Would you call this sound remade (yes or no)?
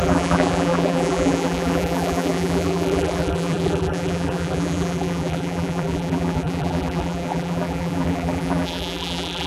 yes